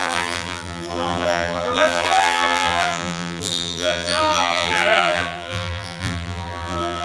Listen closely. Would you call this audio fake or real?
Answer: fake